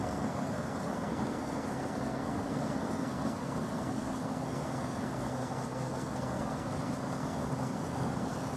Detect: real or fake fake